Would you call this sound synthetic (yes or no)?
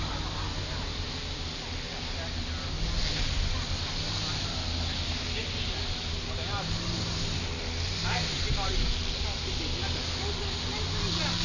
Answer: no